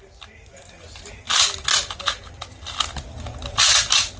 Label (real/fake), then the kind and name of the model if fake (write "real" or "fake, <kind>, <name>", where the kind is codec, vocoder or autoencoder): real